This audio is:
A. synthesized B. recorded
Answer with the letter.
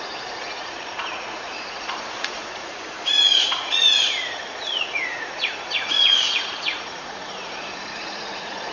A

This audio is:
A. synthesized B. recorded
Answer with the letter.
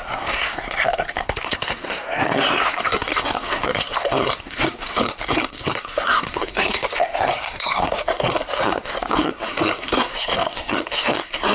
A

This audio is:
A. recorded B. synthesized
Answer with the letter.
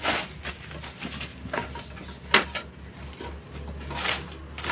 A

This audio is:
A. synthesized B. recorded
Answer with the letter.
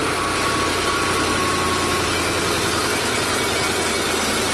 B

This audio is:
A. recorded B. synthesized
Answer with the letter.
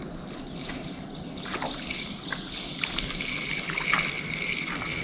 A